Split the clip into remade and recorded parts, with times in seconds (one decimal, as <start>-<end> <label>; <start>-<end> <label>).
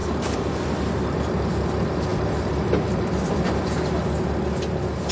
0.0-1.0 remade; 1.0-2.1 recorded; 2.1-3.6 remade; 3.6-5.1 recorded